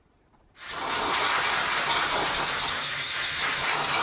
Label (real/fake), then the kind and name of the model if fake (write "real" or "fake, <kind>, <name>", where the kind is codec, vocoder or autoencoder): real